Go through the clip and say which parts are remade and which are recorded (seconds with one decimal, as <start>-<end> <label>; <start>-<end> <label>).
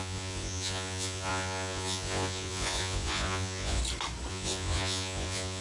0.0-3.8 remade; 3.8-4.3 recorded; 4.3-5.6 remade